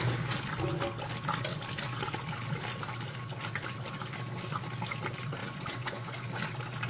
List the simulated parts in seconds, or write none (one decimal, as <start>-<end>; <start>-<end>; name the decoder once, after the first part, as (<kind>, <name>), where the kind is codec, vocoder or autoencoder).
5.4-6.1 (vocoder, Vocos)